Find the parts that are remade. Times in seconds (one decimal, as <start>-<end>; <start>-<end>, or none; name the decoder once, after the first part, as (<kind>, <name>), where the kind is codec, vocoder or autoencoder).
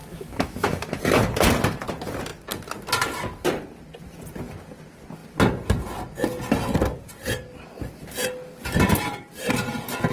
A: 0.0-1.0 (autoencoder, DAC-VAE)